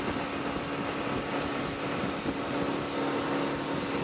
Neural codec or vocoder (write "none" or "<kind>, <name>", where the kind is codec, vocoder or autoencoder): none